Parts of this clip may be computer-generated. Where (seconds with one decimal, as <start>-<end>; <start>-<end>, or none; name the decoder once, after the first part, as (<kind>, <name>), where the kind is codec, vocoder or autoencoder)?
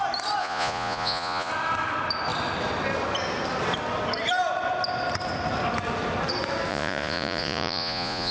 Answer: 0.4-1.5 (vocoder, Vocos); 6.7-8.3